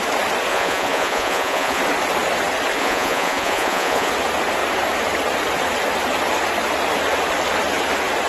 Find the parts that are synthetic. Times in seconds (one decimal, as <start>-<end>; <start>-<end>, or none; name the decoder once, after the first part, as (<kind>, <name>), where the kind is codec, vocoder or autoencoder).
0.5-1.8 (vocoder, Vocos); 2.8-4.1